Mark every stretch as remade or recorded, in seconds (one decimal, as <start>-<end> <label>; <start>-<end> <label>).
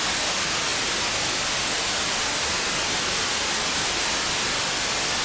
0.0-5.2 recorded